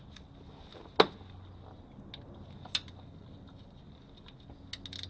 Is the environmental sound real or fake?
real